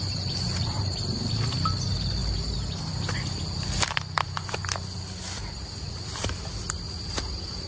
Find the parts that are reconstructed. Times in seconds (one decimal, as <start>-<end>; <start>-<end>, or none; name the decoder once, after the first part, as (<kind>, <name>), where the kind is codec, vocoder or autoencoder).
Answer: none

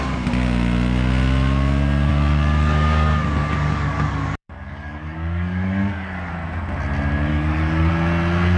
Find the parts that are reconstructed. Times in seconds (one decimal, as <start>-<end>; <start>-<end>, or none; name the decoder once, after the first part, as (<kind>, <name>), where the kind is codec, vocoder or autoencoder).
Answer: 2.1-6.3 (codec, DAC); 7.3-7.9

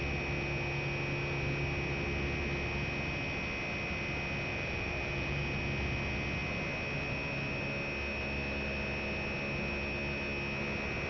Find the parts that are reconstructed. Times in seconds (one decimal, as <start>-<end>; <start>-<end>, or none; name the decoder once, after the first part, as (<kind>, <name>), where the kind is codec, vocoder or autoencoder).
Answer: 4.5-5.4 (vocoder, BigVGAN v2)

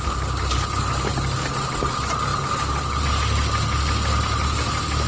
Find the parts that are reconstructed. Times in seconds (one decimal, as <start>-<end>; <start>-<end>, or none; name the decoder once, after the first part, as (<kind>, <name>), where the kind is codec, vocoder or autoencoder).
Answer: none

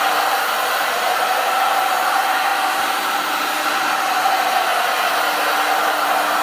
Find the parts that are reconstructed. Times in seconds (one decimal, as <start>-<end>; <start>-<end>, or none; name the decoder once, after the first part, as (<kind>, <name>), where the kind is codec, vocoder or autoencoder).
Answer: 0.0-2.5 (vocoder, BigVGAN v2); 3.6-4.7; 5.5-6.4

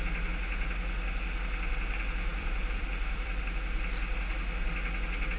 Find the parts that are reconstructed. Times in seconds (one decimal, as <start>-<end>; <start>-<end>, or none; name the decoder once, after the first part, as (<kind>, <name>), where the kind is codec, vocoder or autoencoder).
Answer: 2.3-3.4 (vocoder, BigVGAN v2)